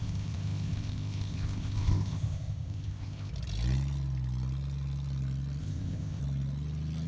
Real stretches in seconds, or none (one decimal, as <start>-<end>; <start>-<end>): 3.3-5.6; 6.2-7.1